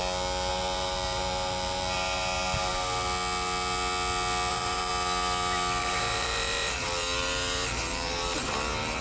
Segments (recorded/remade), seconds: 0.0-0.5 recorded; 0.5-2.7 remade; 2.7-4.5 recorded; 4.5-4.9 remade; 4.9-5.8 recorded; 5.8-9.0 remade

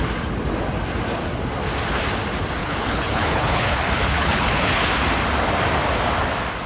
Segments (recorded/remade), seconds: 0.0-2.6 recorded; 2.6-4.9 remade; 4.9-6.7 recorded

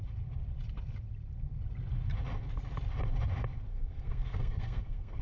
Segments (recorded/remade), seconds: 0.0-3.7 recorded; 3.7-5.2 remade

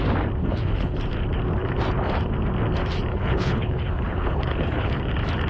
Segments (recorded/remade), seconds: 0.0-0.4 recorded; 0.4-1.0 remade; 1.0-3.1 recorded; 3.1-5.0 remade; 5.0-5.5 recorded

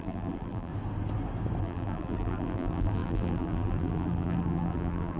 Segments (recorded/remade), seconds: 0.0-0.7 remade; 0.7-1.6 recorded; 1.6-5.2 remade

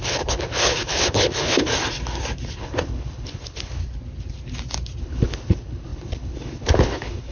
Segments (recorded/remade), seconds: 0.0-1.7 remade; 1.7-2.6 recorded; 2.6-3.8 remade; 3.8-5.0 recorded; 5.0-7.3 remade

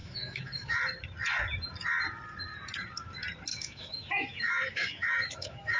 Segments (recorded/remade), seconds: 0.0-0.8 remade; 0.8-3.5 recorded; 3.5-5.8 remade